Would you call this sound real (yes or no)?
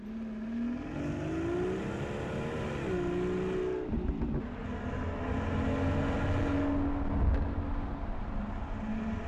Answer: yes